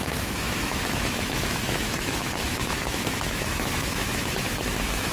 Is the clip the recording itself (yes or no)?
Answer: no